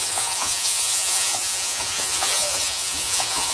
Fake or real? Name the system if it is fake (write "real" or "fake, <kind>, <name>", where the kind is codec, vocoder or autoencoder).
fake, vocoder, Vocos